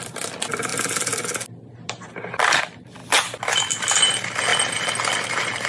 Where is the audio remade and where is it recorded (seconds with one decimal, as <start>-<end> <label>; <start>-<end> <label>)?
0.0-5.7 recorded